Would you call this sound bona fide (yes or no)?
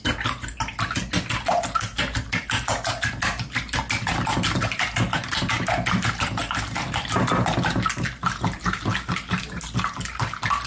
yes